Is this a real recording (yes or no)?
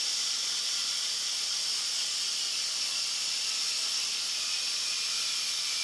yes